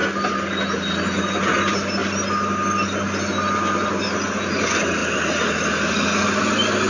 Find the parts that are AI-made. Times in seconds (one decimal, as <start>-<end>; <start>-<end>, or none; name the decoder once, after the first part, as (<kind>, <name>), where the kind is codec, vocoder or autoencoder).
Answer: none